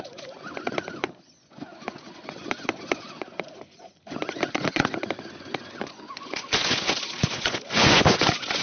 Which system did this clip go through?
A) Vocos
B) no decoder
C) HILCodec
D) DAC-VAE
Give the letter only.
A